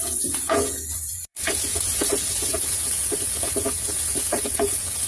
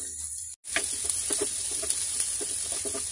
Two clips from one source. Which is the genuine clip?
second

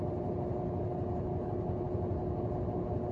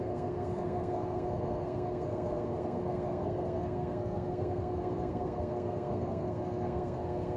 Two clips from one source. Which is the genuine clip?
first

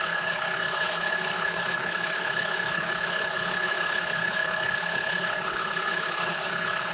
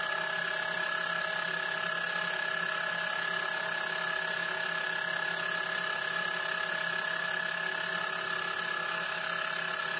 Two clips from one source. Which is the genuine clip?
second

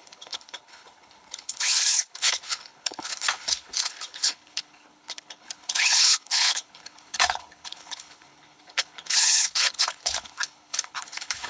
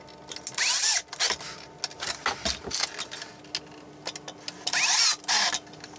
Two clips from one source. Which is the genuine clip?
second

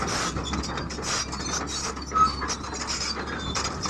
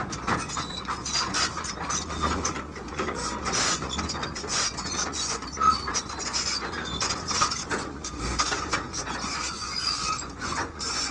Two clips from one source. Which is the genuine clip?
first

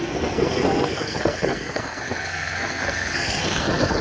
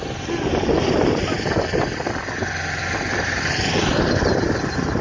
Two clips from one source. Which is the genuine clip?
second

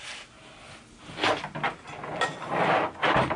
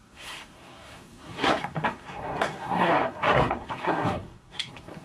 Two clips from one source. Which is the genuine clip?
first